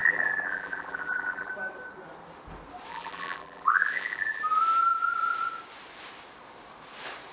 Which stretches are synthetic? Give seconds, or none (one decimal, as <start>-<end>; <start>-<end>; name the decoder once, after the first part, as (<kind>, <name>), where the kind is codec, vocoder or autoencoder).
0.0-1.5 (vocoder, BigVGAN v2); 2.9-4.4